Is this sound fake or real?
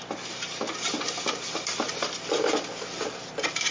real